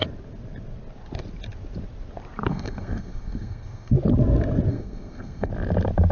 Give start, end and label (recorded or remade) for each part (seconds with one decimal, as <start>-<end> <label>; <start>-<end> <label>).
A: 0.0-2.5 recorded; 2.5-3.9 remade; 3.9-4.7 recorded; 4.7-5.5 remade; 5.5-6.1 recorded